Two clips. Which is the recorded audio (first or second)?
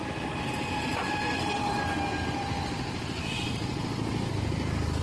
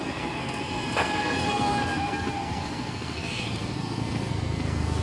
first